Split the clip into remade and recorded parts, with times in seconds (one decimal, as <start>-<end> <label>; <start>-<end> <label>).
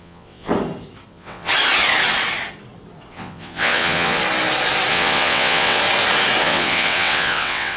0.0-0.5 remade; 0.5-1.1 recorded; 1.1-1.5 remade; 1.5-3.1 recorded; 3.1-4.2 remade; 4.2-4.9 recorded; 4.9-5.8 remade; 5.8-6.4 recorded; 6.4-7.8 remade